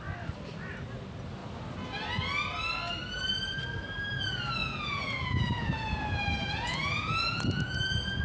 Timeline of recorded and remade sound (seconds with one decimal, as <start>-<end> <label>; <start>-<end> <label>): 0.0-4.6 recorded; 4.6-8.2 remade